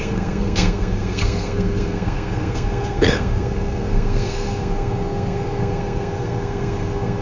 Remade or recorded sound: remade